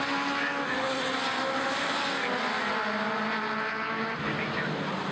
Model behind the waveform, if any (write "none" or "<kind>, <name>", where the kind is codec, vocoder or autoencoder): none